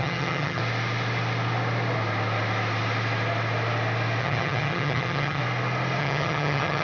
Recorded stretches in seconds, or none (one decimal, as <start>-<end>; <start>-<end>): 0.6-4.2; 5.4-6.0